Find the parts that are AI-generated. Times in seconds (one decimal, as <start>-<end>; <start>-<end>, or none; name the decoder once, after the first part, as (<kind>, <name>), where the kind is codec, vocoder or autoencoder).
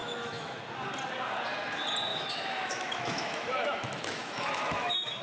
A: 0.0-0.6 (autoencoder, DAC-VAE); 2.1-5.2